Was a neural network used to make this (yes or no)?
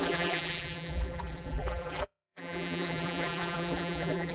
yes